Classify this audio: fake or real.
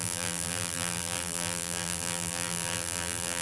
fake